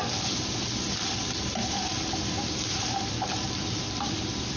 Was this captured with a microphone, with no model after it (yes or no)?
yes